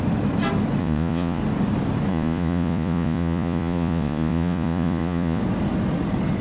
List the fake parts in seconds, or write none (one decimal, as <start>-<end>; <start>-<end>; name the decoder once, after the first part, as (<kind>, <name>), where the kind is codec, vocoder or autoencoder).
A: 0.8-1.4 (vocoder, Vocos); 2.1-5.4